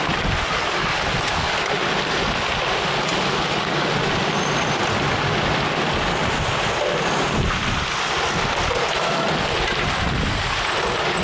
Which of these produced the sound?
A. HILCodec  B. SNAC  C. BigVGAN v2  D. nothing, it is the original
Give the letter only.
D